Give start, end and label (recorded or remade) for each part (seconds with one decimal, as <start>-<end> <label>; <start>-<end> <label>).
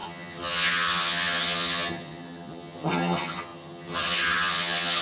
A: 0.0-5.0 remade